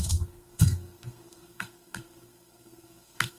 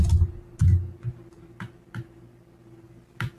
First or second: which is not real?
first